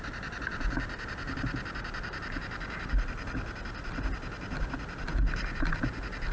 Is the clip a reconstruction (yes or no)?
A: no